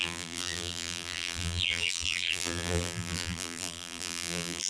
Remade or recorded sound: remade